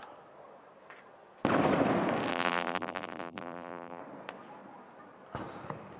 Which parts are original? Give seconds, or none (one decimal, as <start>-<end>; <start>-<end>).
0.0-2.3; 4.0-6.0